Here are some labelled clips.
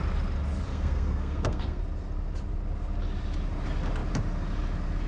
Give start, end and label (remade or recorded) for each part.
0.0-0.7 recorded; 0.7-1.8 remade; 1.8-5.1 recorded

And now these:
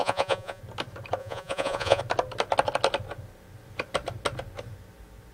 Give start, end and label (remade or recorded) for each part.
0.0-0.6 remade; 0.6-1.2 recorded; 1.2-2.0 remade; 2.0-5.3 recorded

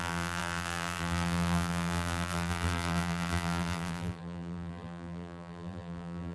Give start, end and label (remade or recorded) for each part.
0.0-6.3 remade

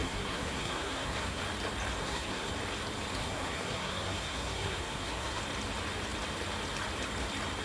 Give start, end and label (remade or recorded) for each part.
0.0-1.4 remade; 1.4-2.0 recorded; 2.0-2.5 remade; 2.5-3.2 recorded; 3.2-5.4 remade; 5.4-7.6 recorded

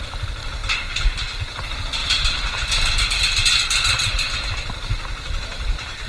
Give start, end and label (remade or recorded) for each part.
0.0-0.6 remade; 0.6-1.2 recorded; 1.2-6.1 remade

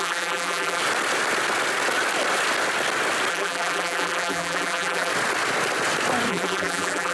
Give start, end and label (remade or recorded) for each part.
0.0-0.8 remade; 0.8-3.3 recorded; 3.3-5.1 remade; 5.1-6.3 recorded; 6.3-7.1 remade